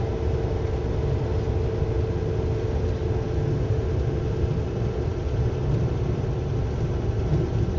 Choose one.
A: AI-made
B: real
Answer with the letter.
B